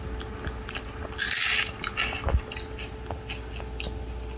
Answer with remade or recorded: recorded